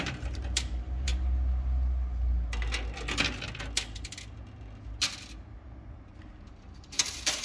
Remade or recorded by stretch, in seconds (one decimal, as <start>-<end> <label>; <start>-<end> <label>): 0.0-1.1 remade; 1.1-5.5 recorded; 5.5-7.4 remade